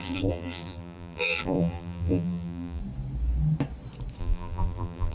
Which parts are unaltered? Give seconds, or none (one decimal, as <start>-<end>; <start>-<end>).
2.8-4.2